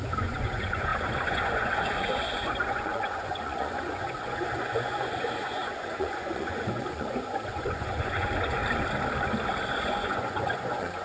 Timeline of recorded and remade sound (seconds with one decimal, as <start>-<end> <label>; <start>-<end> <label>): 0.0-8.6 remade; 8.6-9.7 recorded; 9.7-11.0 remade